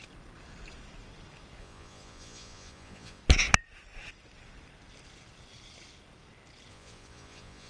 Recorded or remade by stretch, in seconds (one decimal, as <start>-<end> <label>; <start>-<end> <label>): 0.0-1.6 recorded; 1.6-3.2 remade; 3.2-6.7 recorded; 6.7-7.7 remade